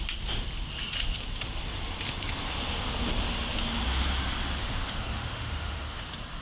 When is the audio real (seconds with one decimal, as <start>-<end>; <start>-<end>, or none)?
0.0-4.6; 6.0-6.4